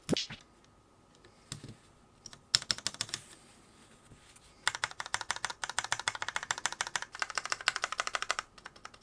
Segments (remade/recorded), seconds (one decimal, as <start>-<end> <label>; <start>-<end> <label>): 0.0-5.5 recorded; 5.5-6.6 remade; 6.6-9.0 recorded